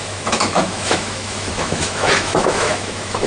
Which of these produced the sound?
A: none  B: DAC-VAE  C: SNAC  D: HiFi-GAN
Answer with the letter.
B